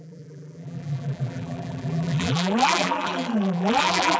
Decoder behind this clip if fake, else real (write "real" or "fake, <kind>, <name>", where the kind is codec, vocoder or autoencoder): fake, vocoder, BigVGAN v2